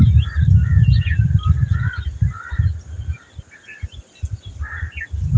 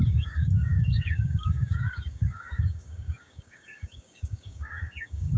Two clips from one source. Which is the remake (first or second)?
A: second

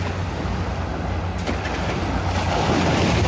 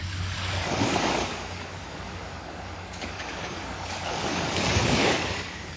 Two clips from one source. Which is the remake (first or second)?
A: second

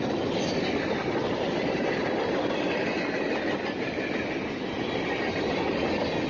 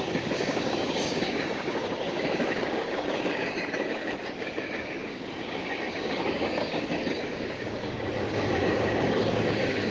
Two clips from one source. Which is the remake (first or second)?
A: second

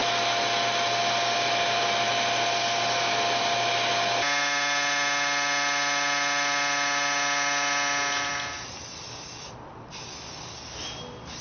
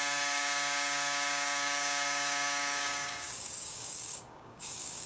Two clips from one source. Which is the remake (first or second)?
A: second